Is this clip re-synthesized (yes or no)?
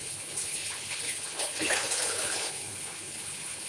yes